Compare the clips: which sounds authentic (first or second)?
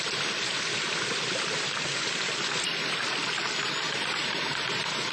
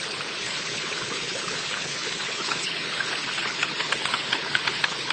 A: first